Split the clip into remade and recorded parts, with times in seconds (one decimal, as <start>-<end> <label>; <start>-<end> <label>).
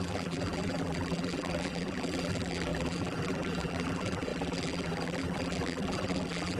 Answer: 0.0-6.6 remade